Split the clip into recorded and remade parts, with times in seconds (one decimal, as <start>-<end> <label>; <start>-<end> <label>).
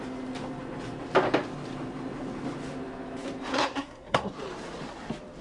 0.0-3.5 recorded; 3.5-4.3 remade; 4.3-5.4 recorded